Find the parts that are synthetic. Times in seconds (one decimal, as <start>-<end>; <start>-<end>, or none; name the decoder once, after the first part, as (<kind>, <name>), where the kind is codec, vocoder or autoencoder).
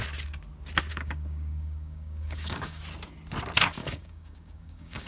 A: 0.9-2.8 (codec, DAC); 3.8-5.1